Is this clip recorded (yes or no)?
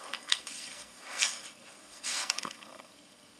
no